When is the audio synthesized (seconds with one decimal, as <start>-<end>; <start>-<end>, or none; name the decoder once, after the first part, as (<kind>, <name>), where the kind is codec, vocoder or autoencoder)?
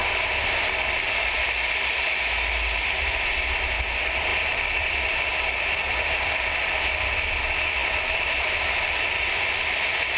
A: 4.3-7.0 (vocoder, BigVGAN v2); 7.8-10.2